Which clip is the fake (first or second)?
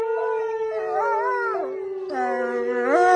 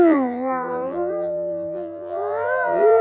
second